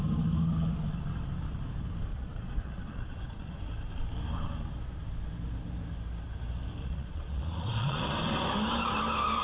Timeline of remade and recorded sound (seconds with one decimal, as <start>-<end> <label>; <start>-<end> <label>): 0.0-2.1 recorded; 2.1-3.6 remade; 3.6-6.8 recorded; 6.8-8.0 remade; 8.0-9.4 recorded